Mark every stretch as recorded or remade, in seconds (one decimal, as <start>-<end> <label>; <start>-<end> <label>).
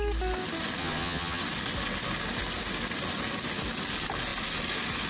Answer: 0.0-0.8 recorded; 0.8-1.4 remade; 1.4-5.1 recorded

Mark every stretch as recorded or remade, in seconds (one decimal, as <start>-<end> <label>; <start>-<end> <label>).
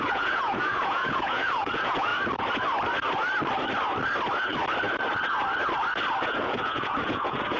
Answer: 0.0-2.1 remade; 2.1-6.2 recorded; 6.2-7.6 remade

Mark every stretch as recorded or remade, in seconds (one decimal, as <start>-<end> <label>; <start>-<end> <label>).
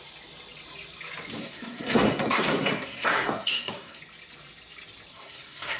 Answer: 0.0-1.4 recorded; 1.4-4.0 remade; 4.0-5.1 recorded; 5.1-5.8 remade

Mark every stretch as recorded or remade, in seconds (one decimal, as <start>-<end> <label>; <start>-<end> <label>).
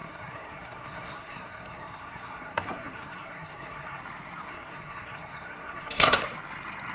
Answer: 0.0-4.0 remade; 4.0-4.4 recorded; 4.4-6.2 remade; 6.2-6.9 recorded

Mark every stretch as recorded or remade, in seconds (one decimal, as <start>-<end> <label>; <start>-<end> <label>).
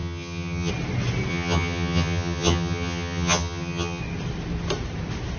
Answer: 0.0-0.7 remade; 0.7-1.3 recorded; 1.3-4.0 remade; 4.0-5.4 recorded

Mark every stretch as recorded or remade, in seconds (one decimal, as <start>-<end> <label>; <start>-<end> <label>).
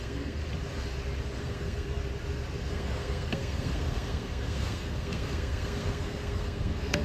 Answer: 0.0-0.4 remade; 0.4-1.4 recorded; 1.4-2.0 remade; 2.0-2.7 recorded; 2.7-7.0 remade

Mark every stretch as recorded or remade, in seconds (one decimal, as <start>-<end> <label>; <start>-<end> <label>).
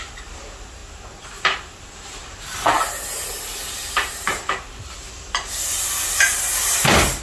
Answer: 0.0-0.8 recorded; 0.8-5.1 remade; 5.1-7.2 recorded